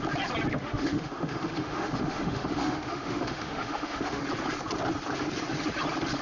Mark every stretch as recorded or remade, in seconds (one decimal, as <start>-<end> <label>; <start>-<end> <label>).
0.0-0.5 recorded; 0.5-4.2 remade; 4.2-6.2 recorded

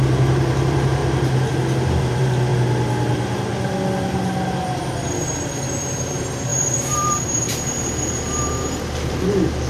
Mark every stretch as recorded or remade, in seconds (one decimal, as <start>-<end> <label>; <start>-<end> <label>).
0.0-1.0 remade; 1.0-2.0 recorded; 2.0-2.5 remade; 2.5-5.7 recorded; 5.7-9.7 remade